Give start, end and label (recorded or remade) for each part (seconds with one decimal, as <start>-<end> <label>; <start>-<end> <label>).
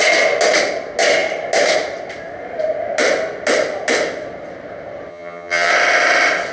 0.0-5.1 recorded; 5.1-5.7 remade; 5.7-6.5 recorded